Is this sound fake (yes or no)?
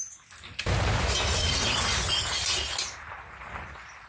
no